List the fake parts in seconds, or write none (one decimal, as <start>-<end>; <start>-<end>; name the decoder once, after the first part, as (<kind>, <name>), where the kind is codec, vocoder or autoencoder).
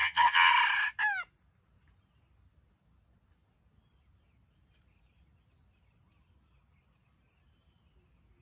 0.0-0.5 (vocoder, HiFi-GAN)